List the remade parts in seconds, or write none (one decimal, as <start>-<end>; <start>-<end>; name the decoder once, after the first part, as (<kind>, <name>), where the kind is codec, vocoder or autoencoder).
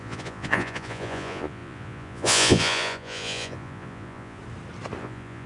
0.0-4.4 (vocoder, Vocos); 5.0-5.5